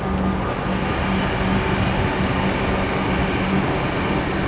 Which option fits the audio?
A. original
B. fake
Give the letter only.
A